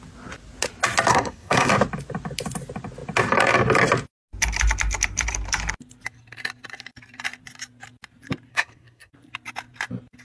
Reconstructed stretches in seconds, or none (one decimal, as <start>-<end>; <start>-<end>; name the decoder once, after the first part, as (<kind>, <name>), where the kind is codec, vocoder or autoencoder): 1.1-1.7 (codec, SNAC); 8.5-9.1